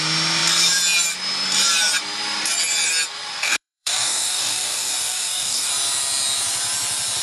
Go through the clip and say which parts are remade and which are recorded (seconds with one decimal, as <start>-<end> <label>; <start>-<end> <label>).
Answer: 0.0-3.4 recorded; 3.4-5.7 remade; 5.7-7.2 recorded